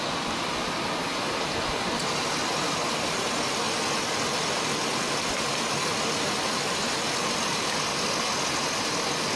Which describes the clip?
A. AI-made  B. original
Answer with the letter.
B